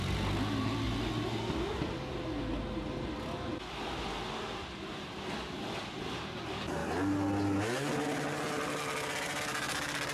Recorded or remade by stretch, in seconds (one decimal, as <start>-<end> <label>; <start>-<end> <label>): 0.0-10.1 recorded